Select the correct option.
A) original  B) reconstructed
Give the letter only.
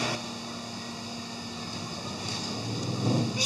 A